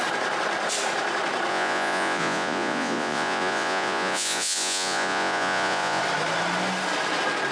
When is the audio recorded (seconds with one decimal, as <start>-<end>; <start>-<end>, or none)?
0.0-1.5; 6.0-7.5